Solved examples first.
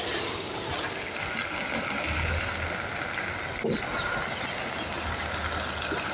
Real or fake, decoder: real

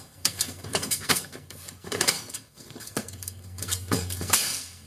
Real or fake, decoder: fake, codec, SNAC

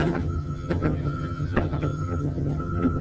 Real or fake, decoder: fake, vocoder, HiFi-GAN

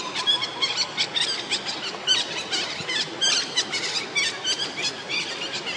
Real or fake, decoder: real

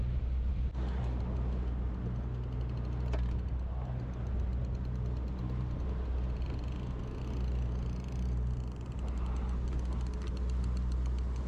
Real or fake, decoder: real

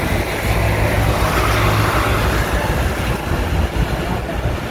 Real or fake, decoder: real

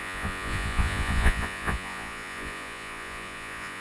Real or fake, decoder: fake, vocoder, Vocos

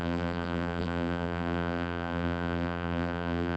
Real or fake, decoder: fake, vocoder, BigVGAN v2